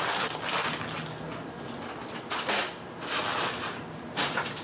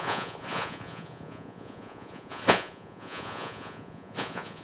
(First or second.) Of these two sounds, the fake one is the second